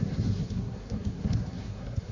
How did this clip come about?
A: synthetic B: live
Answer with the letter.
A